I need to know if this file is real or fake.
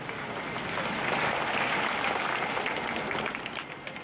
real